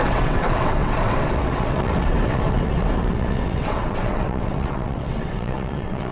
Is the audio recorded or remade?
remade